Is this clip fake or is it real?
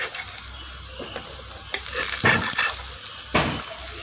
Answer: real